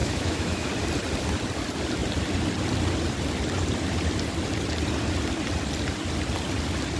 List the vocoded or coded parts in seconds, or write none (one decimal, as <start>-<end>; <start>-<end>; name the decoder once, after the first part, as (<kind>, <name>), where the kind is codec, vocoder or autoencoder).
0.0-0.7 (autoencoder, DAC-VAE)